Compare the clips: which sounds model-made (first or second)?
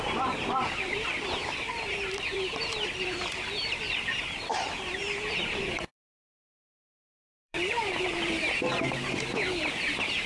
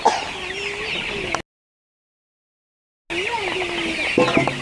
first